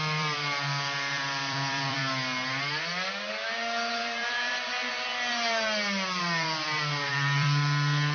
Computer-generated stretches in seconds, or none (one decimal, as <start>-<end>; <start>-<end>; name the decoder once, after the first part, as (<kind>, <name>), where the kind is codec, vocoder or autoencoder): 0.0-2.0 (vocoder, BigVGAN v2); 3.9-5.1; 6.2-8.1